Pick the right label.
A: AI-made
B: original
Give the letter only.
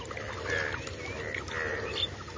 B